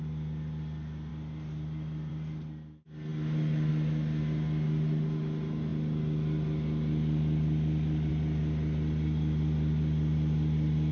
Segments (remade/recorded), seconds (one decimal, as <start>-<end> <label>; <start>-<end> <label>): 0.0-10.9 recorded